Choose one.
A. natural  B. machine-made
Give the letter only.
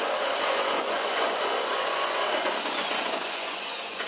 B